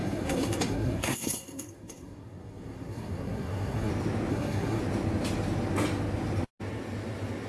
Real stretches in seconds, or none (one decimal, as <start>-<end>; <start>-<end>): 3.9-4.3; 4.8-7.5